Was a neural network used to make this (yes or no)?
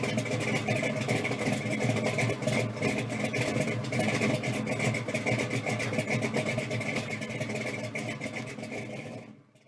no